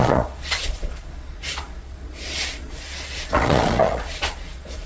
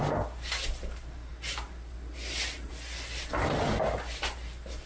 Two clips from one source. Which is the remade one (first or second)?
first